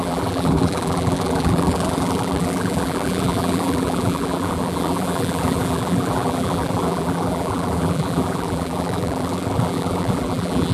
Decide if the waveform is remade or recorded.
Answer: remade